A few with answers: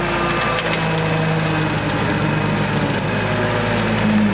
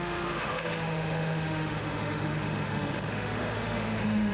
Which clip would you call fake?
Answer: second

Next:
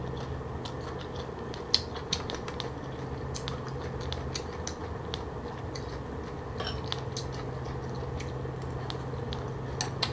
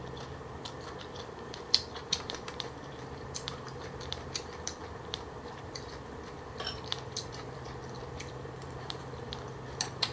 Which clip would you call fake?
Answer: second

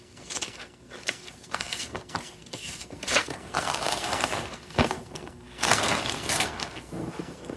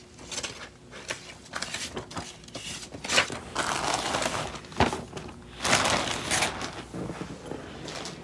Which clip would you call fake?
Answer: first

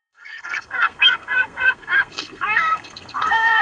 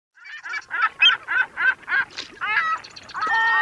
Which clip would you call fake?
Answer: first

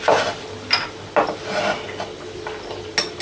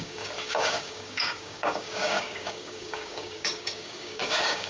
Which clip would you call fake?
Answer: second